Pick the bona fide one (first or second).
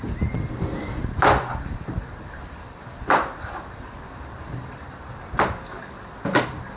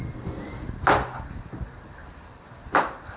second